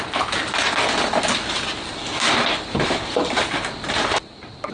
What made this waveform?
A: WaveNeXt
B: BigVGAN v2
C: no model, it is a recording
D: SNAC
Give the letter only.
C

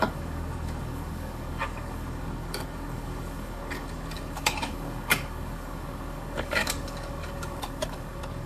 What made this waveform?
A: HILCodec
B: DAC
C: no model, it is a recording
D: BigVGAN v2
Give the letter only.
B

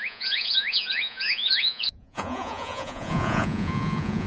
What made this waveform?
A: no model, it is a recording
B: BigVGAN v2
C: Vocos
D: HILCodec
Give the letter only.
C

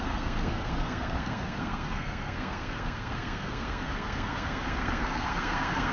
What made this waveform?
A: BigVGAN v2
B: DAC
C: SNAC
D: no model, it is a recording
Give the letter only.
C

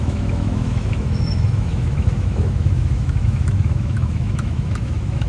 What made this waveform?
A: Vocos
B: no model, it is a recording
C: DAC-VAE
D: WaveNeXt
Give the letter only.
C